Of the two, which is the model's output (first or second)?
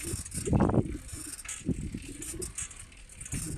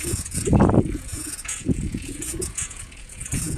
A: second